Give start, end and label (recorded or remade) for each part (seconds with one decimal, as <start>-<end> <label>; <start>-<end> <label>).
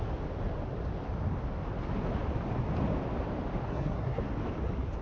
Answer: 0.0-3.7 recorded; 3.7-4.2 remade; 4.2-5.0 recorded